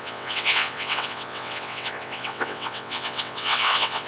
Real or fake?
fake